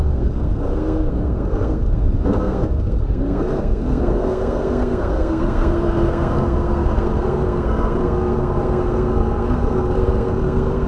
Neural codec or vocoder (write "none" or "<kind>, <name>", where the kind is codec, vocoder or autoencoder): codec, SNAC